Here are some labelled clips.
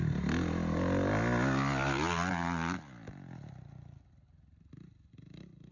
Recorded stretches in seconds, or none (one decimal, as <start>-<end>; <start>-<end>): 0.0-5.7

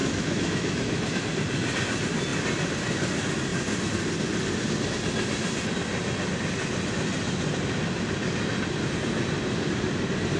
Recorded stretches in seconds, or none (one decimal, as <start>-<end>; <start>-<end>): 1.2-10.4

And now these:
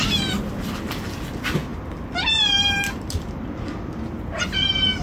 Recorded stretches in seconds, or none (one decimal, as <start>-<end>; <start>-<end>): 0.0-5.0